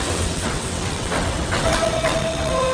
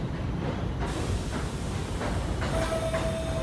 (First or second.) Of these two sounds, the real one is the second